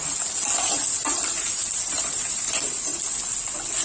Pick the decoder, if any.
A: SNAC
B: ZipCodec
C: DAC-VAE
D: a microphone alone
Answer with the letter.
D